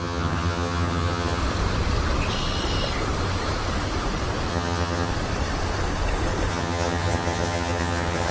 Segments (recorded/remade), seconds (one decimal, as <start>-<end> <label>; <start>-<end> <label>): 0.0-1.4 remade; 1.4-4.5 recorded; 4.5-5.1 remade; 5.1-6.5 recorded; 6.5-8.3 remade